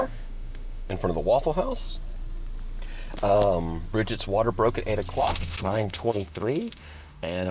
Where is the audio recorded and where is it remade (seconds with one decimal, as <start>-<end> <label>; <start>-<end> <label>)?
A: 0.0-0.9 remade; 0.9-5.2 recorded; 5.2-7.5 remade